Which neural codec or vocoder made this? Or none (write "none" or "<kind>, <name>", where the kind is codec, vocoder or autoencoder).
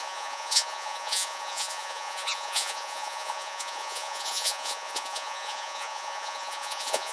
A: vocoder, Vocos